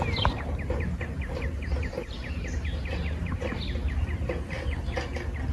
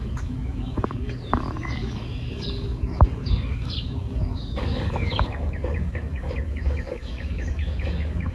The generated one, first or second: second